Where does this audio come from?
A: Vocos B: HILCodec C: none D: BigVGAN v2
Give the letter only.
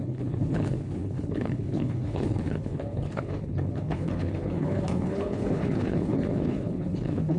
B